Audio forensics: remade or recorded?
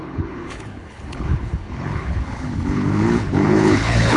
remade